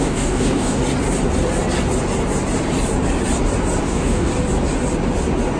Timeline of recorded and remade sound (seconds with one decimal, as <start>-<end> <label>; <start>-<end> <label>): 0.0-0.8 remade; 0.8-3.8 recorded; 3.8-4.3 remade; 4.3-5.6 recorded